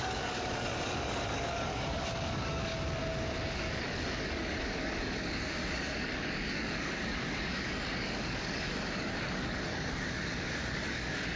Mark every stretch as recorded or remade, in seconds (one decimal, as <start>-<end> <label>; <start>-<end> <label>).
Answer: 0.0-3.0 remade; 3.0-3.5 recorded; 3.5-11.4 remade